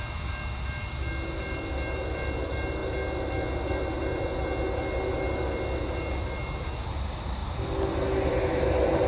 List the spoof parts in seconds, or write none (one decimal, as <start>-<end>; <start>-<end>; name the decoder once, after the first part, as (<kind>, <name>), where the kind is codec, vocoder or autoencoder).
none